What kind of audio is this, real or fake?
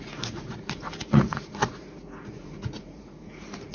fake